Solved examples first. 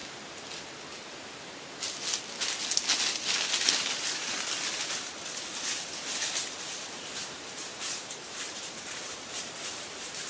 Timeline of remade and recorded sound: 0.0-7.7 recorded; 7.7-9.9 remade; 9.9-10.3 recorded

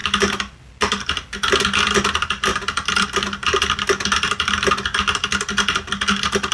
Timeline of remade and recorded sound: 0.0-0.6 remade; 0.6-6.5 recorded

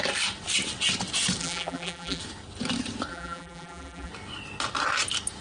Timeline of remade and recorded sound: 0.0-1.4 recorded; 1.4-2.2 remade; 2.2-3.1 recorded; 3.1-4.1 remade; 4.1-5.4 recorded